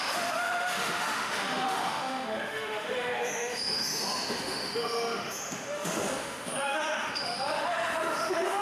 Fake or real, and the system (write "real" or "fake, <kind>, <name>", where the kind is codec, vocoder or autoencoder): fake, autoencoder, DAC-VAE